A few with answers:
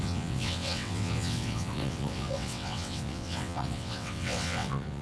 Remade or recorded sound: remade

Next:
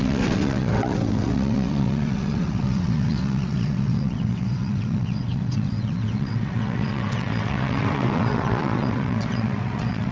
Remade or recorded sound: remade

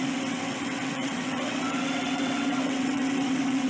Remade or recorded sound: remade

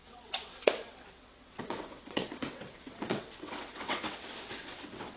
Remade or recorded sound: remade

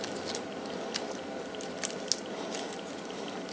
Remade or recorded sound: recorded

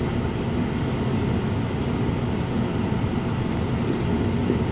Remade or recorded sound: recorded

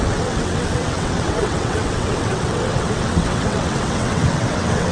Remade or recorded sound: remade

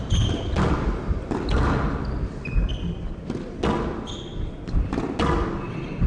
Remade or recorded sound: recorded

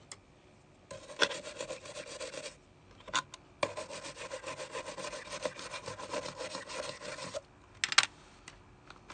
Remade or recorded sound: recorded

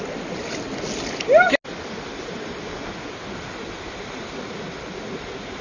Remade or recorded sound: recorded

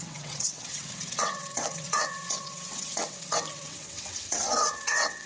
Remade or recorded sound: remade